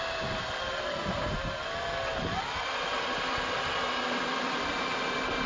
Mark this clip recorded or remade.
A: recorded